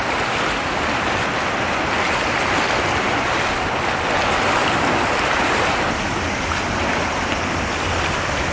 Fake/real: real